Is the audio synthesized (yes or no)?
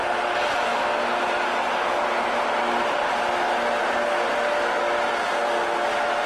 no